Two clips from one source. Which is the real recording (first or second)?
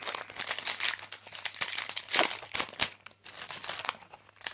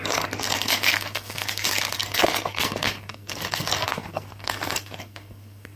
first